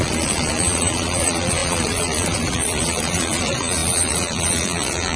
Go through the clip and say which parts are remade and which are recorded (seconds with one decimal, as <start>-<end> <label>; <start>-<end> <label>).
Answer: 0.0-5.2 remade